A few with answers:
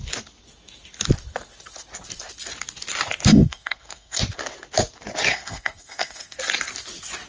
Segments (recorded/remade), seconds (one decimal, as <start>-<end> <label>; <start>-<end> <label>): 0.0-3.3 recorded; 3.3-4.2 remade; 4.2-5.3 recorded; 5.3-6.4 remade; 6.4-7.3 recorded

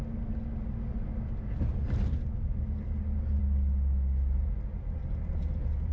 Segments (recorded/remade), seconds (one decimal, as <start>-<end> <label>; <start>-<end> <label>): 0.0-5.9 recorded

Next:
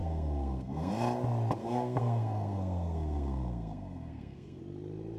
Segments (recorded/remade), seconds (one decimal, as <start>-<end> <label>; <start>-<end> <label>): 0.0-0.9 remade; 0.9-1.6 recorded; 1.6-4.6 remade; 4.6-5.2 recorded